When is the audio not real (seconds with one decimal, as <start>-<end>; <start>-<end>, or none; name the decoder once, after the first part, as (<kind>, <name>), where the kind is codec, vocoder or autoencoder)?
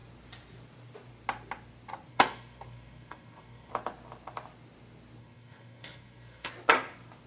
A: 2.1-3.7 (codec, SNAC); 5.2-6.5